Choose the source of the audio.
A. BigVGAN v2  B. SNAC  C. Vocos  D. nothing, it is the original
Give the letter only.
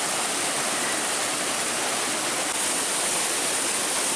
D